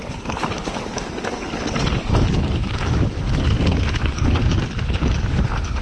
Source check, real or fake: fake